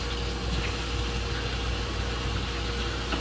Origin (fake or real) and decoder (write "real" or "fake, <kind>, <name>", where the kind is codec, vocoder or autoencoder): real